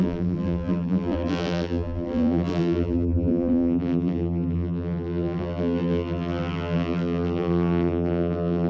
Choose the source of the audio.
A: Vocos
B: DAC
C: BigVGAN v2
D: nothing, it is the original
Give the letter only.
C